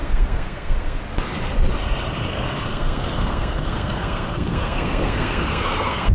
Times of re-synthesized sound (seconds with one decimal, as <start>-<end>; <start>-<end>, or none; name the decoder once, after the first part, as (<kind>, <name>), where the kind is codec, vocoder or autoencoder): 0.0-1.0 (codec, SNAC); 2.3-6.1